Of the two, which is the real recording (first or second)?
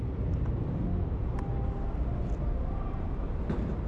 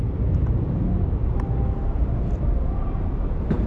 first